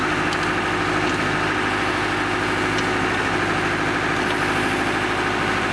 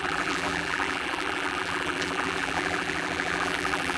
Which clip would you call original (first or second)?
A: first